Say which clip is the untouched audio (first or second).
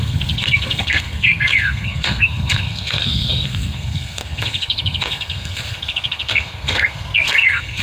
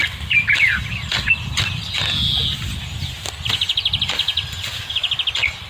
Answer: second